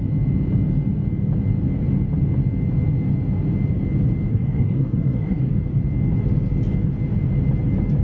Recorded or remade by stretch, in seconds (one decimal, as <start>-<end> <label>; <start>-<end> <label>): 0.0-4.3 recorded; 4.3-5.5 remade; 5.5-8.0 recorded